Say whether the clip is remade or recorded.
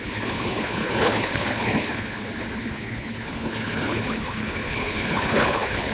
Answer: remade